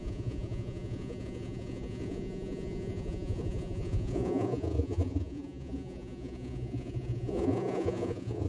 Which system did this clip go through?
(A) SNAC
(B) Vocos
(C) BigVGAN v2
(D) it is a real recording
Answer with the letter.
B